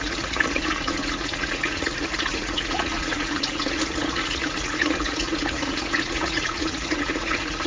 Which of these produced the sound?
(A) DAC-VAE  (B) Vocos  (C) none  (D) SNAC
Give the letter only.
B